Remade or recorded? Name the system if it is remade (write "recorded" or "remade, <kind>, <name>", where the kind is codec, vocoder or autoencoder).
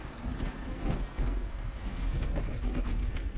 remade, codec, SNAC